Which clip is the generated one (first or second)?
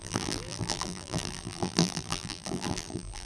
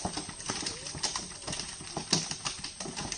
first